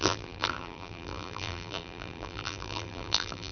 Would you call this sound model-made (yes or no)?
yes